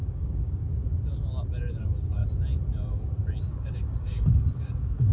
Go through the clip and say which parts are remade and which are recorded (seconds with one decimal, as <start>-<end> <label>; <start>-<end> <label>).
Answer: 0.0-0.6 remade; 0.6-1.8 recorded; 1.8-2.2 remade; 2.2-3.4 recorded; 3.4-5.1 remade